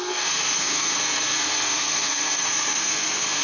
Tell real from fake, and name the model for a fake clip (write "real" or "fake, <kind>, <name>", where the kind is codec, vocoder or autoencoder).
fake, codec, SNAC